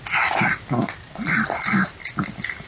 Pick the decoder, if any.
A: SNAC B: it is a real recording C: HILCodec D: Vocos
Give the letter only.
B